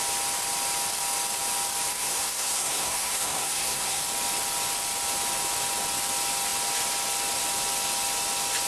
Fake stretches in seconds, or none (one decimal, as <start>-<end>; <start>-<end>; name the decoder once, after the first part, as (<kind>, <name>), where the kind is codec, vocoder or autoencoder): 1.9-4.0 (codec, SNAC)